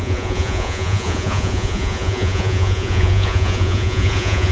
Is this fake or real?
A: fake